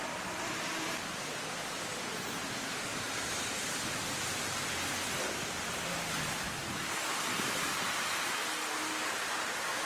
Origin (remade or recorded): remade